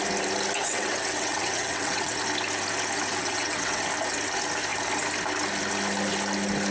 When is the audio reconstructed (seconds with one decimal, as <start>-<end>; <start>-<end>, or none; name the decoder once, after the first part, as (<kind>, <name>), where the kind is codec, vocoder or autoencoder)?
0.6-2.2 (vocoder, WaveNeXt); 3.2-3.8